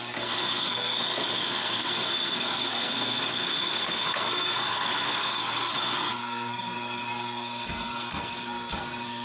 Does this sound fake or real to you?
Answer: fake